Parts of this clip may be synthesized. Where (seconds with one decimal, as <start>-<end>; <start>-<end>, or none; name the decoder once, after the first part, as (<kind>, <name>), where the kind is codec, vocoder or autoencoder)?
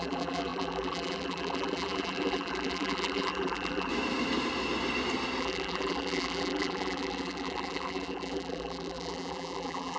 0.0-3.9 (vocoder, BigVGAN v2); 5.4-10.0